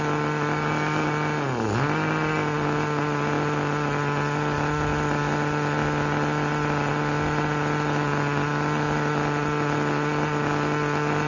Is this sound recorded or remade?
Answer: recorded